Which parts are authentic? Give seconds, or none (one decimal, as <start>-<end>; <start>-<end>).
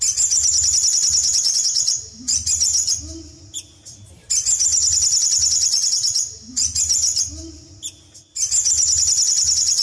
0.0-1.2; 2.0-9.8